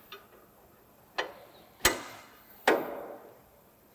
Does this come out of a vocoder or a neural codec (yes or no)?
no